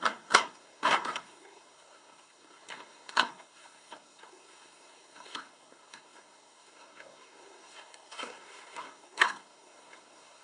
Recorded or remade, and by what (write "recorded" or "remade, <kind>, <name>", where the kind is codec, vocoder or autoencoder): remade, codec, SNAC